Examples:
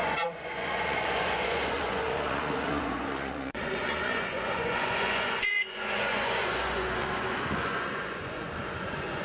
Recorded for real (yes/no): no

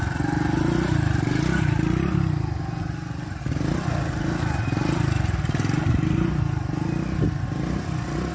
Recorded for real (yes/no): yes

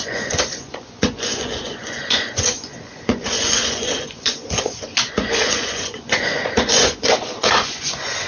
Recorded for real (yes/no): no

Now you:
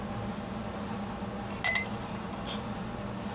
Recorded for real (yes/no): yes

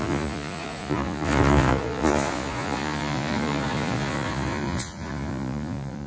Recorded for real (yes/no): no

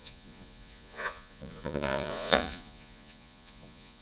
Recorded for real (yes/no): no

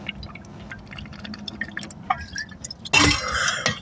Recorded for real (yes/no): yes